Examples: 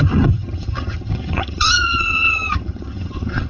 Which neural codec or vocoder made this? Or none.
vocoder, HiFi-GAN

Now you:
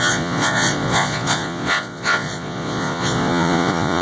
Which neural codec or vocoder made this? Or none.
vocoder, Vocos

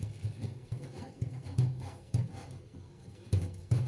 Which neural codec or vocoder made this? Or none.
codec, SNAC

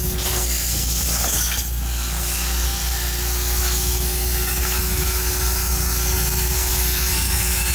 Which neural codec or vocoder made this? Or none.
codec, SNAC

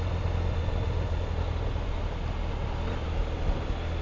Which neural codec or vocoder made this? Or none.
none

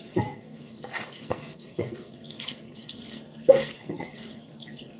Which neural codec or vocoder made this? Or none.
codec, SNAC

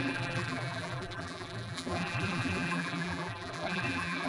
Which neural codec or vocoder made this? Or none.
vocoder, BigVGAN v2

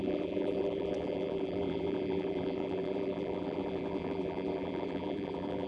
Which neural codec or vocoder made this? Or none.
vocoder, BigVGAN v2